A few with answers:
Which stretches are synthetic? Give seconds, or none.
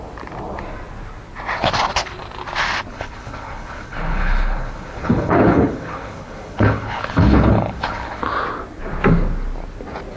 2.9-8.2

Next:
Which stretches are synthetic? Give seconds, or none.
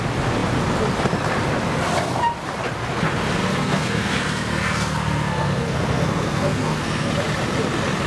3.4-7.1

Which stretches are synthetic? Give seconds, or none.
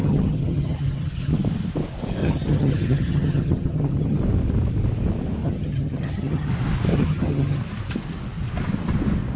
0.0-1.3; 2.2-4.2; 5.4-6.5; 6.9-7.6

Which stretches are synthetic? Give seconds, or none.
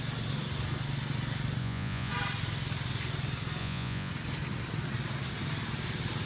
1.6-2.1; 3.6-4.1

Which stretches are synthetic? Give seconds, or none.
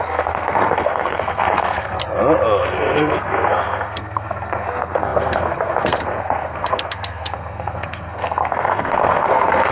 0.0-2.0; 2.6-9.7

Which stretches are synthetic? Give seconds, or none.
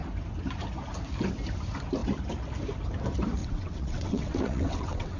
3.4-5.2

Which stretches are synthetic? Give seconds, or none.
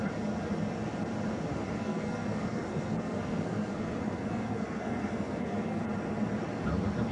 1.5-5.8